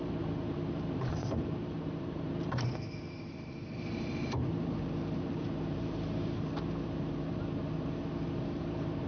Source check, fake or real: fake